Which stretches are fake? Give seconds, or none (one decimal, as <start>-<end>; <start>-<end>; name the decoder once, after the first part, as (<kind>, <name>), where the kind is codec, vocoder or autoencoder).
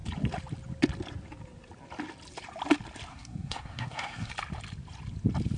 3.1-4.3 (codec, SNAC)